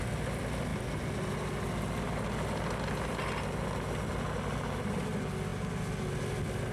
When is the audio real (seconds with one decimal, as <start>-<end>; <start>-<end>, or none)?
0.0-6.7